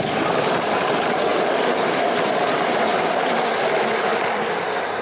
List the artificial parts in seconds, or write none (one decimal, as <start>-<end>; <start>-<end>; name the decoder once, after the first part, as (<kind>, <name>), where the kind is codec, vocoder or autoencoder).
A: none